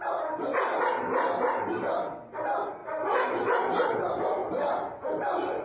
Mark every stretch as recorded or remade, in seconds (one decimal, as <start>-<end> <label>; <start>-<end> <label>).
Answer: 0.0-5.6 recorded